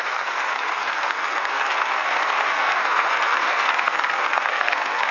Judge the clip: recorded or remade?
remade